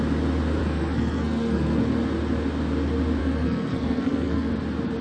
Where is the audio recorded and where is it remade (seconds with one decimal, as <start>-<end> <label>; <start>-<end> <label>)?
0.0-0.6 recorded; 0.6-1.8 remade; 1.8-3.2 recorded; 3.2-4.5 remade; 4.5-5.0 recorded